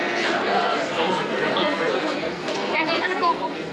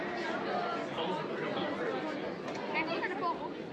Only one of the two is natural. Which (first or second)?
second